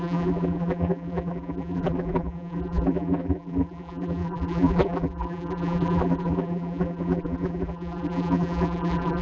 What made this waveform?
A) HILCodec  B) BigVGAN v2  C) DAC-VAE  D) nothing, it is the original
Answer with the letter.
B